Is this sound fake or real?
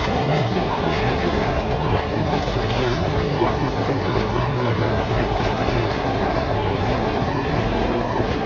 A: fake